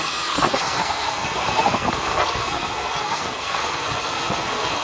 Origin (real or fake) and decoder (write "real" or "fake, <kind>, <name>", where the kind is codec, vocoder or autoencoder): fake, codec, SNAC